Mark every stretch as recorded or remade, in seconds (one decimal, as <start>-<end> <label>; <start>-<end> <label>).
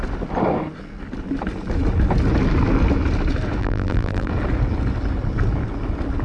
0.0-3.6 recorded; 3.6-4.3 remade; 4.3-6.2 recorded